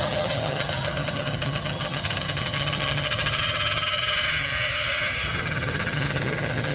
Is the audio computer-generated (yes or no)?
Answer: yes